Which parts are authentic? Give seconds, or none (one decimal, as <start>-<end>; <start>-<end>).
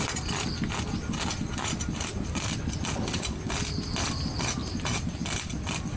0.0-6.0